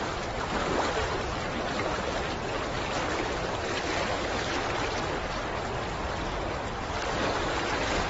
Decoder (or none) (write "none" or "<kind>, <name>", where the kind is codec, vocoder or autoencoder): none